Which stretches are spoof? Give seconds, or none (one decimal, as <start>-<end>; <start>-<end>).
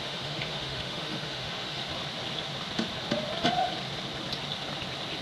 0.0-1.8